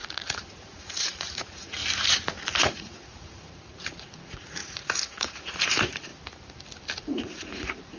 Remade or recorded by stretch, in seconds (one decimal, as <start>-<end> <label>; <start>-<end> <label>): 0.0-1.8 remade; 1.8-2.6 recorded; 2.6-6.1 remade; 6.1-7.0 recorded; 7.0-8.0 remade